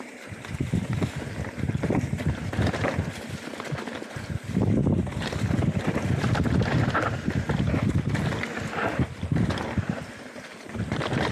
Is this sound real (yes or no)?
yes